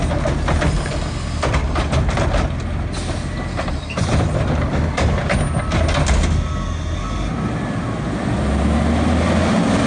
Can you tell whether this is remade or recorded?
recorded